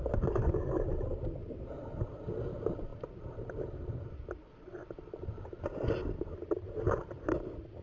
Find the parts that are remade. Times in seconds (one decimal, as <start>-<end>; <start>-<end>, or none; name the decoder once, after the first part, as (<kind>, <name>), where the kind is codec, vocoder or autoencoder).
1.4-2.0 (vocoder, BigVGAN v2)